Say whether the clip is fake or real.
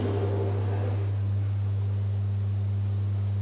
real